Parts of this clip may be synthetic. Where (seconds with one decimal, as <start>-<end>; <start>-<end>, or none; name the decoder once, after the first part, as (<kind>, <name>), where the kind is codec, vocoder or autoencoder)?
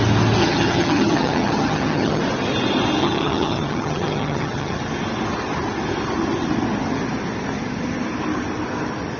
0.4-2.2 (vocoder, HiFi-GAN); 3.0-4.8